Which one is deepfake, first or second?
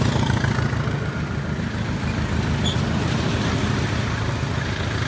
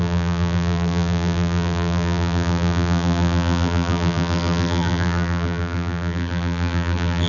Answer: second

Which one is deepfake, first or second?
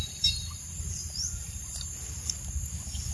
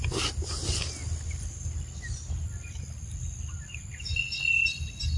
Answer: first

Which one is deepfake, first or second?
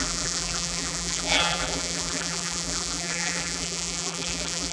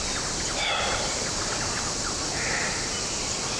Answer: first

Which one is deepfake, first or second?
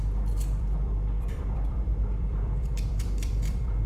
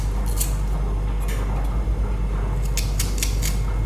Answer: first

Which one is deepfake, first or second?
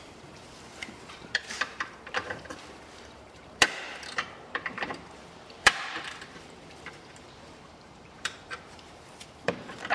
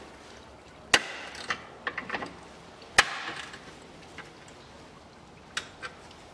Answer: first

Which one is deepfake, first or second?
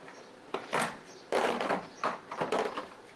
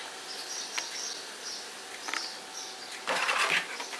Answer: first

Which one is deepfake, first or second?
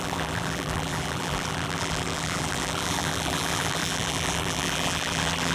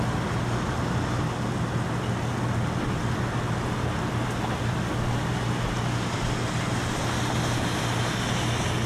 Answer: first